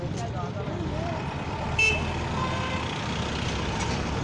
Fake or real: real